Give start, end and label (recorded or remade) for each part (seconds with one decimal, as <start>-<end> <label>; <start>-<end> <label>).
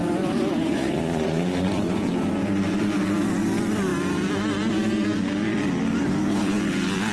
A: 0.0-2.1 remade; 2.1-7.1 recorded